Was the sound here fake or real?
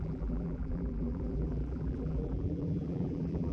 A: fake